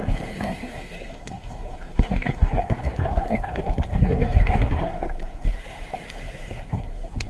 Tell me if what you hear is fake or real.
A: fake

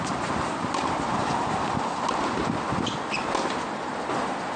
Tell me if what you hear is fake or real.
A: real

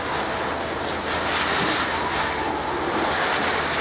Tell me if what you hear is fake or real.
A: real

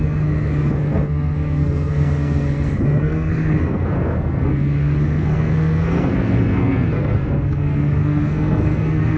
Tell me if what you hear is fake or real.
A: fake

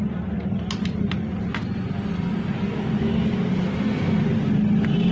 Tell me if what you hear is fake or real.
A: real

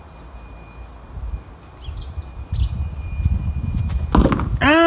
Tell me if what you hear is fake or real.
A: real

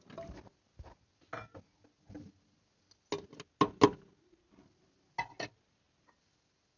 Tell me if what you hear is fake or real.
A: real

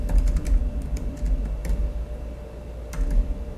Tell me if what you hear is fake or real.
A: real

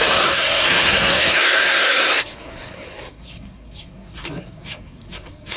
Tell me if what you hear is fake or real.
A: fake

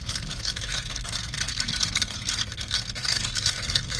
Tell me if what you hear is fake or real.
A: fake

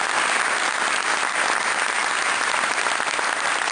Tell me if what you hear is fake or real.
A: real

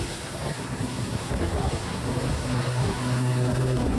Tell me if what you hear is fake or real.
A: fake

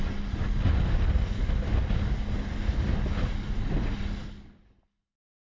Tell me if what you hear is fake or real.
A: real